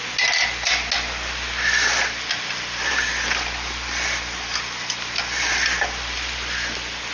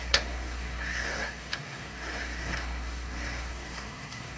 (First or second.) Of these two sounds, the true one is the first